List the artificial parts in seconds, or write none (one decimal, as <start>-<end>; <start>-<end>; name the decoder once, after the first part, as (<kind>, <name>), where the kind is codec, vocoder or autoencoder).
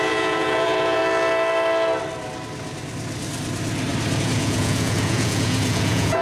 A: 0.0-1.0 (vocoder, Vocos); 4.2-6.2